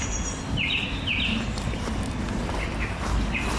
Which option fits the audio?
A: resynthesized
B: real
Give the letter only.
B